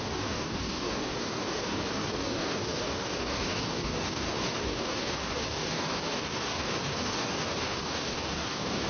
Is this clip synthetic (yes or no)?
yes